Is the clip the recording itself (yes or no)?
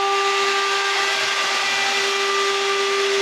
yes